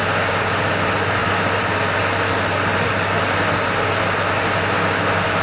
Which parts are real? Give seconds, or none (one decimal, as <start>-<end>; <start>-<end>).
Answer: 0.0-5.4